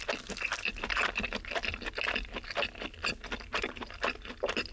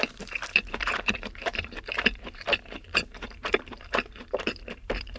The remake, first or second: second